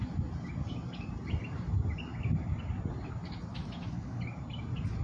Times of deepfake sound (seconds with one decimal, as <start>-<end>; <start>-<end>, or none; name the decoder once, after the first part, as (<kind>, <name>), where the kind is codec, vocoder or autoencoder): 3.5-4.2 (autoencoder, DAC-VAE)